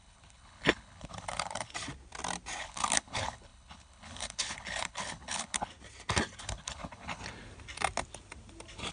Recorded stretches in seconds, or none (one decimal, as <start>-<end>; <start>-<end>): 1.7-2.6; 5.7-6.4; 7.2-8.9